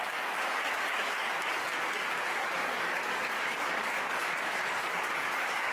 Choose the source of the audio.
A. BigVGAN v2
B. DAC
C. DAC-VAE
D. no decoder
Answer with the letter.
B